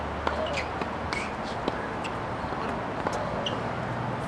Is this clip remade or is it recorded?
recorded